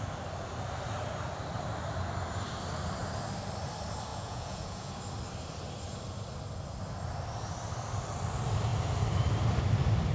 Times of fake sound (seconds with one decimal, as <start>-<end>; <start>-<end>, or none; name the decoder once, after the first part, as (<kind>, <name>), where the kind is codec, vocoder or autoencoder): 4.1-4.9 (vocoder, Vocos)

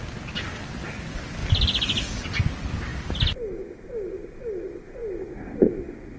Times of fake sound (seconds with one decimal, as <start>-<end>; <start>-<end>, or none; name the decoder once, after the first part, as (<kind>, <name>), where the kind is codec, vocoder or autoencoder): none

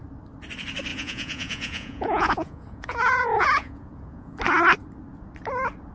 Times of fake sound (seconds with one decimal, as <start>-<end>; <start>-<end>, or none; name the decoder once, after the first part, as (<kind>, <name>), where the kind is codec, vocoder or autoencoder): 0.9-4.4 (vocoder, Vocos)

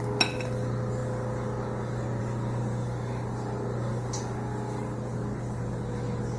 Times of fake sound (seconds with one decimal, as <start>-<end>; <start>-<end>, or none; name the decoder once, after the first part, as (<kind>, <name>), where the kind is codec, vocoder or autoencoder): none

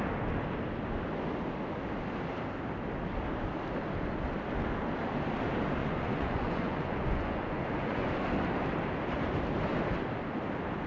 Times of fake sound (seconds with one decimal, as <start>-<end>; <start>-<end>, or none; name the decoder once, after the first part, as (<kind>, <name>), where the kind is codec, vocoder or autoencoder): 5.8-8.1 (vocoder, Vocos)